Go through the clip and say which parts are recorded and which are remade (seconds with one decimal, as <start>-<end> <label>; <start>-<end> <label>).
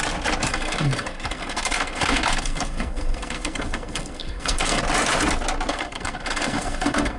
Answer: 0.0-0.5 recorded; 0.5-4.8 remade; 4.8-5.7 recorded; 5.7-7.2 remade